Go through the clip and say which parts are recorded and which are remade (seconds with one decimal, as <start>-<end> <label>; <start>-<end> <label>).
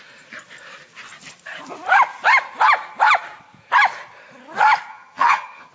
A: 0.0-4.9 recorded; 4.9-5.7 remade